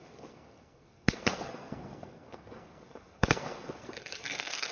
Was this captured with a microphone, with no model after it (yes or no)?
no